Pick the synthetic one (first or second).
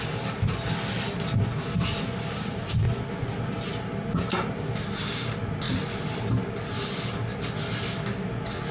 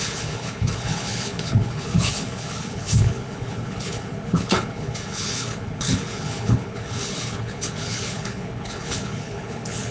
second